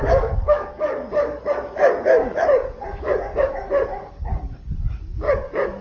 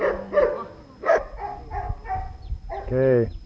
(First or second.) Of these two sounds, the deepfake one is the first